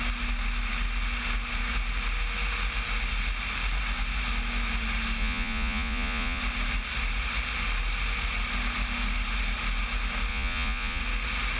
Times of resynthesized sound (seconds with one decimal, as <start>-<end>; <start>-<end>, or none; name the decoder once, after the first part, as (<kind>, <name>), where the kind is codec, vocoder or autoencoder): 5.2-6.4 (vocoder, Vocos); 10.3-11.0